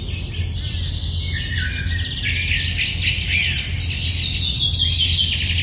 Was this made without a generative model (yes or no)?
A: yes